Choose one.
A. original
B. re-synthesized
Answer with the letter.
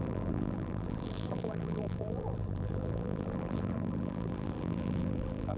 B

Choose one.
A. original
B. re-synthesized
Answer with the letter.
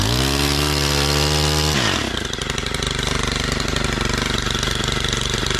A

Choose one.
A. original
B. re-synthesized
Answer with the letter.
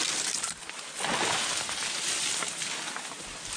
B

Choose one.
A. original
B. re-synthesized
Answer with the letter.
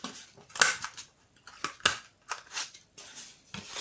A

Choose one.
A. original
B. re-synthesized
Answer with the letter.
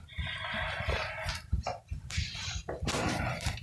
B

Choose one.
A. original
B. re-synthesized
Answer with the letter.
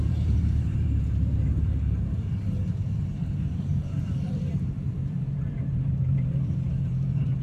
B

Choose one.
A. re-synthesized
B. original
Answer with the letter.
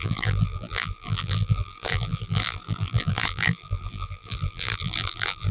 A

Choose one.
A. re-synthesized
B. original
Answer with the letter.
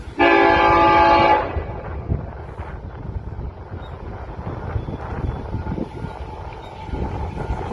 B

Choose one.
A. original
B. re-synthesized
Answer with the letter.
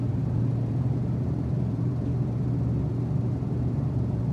B